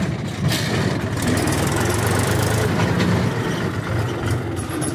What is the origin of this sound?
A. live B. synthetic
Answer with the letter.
B